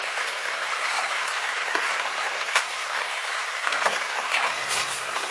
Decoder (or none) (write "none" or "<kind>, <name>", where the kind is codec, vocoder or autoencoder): codec, SNAC